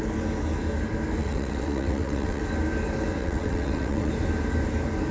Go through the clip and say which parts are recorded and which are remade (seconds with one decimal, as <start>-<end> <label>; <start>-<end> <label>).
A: 0.0-1.2 recorded; 1.2-2.4 remade; 2.4-3.2 recorded; 3.2-4.1 remade; 4.1-5.1 recorded